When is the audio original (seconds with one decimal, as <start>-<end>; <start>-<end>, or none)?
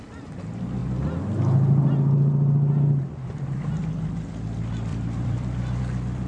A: 0.0-4.9; 5.8-6.3